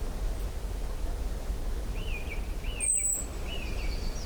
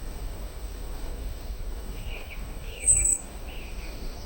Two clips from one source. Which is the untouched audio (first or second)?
first